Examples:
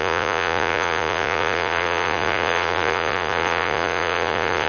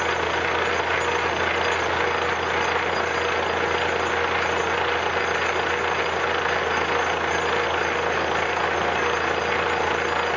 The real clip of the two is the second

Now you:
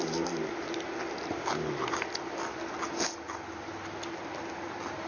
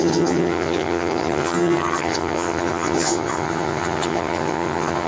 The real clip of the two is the first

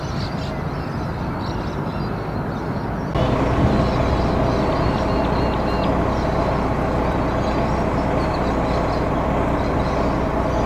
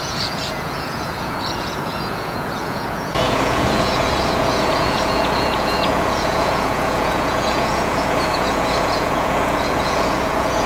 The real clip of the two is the first